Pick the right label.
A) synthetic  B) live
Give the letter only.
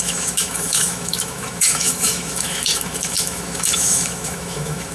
A